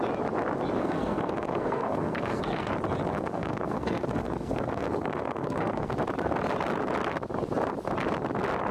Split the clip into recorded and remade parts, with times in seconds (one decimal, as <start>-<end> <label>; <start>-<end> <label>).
0.0-0.8 recorded; 0.8-2.7 remade; 2.7-3.1 recorded; 3.1-5.9 remade; 5.9-8.7 recorded